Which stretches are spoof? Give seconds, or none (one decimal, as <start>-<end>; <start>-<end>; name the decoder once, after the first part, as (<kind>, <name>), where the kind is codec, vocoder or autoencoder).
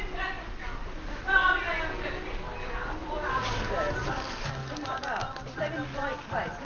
0.0-1.4 (vocoder, BigVGAN v2); 2.1-4.6